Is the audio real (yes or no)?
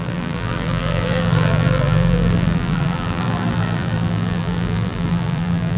no